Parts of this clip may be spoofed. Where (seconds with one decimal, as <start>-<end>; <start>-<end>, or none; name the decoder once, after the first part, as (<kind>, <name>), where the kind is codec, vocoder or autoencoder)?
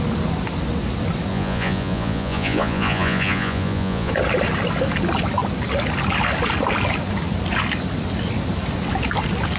1.3-4.1 (vocoder, Vocos)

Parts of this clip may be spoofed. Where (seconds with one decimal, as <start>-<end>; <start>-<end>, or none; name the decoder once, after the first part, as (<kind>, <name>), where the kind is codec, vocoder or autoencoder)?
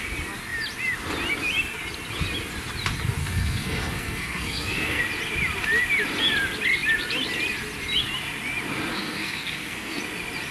3.2-5.0 (codec, SNAC); 8.9-10.0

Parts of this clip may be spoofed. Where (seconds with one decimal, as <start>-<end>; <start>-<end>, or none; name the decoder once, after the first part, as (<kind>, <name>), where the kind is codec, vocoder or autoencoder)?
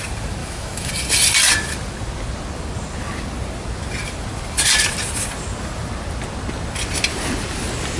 0.4-0.9 (autoencoder, DAC-VAE)